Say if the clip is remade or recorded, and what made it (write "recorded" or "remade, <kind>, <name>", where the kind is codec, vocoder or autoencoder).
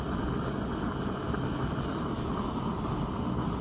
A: recorded